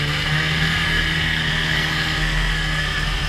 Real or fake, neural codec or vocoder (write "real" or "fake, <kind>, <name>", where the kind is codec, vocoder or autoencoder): fake, codec, SNAC